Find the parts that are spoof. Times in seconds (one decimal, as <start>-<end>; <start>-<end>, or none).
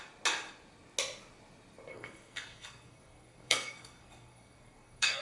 1.9-5.2